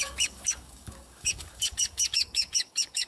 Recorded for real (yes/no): no